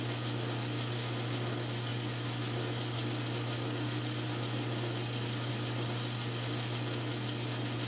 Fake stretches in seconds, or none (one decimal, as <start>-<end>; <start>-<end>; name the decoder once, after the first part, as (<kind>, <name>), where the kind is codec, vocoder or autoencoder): none